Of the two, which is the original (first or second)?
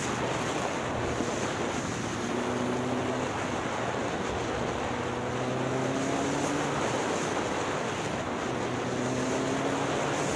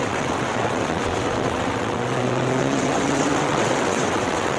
first